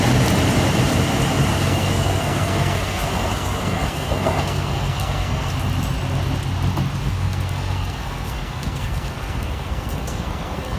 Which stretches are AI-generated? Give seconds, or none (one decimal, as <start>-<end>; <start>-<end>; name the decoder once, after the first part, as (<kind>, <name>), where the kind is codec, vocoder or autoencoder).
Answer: 1.5-5.5 (codec, SNAC); 7.0-10.8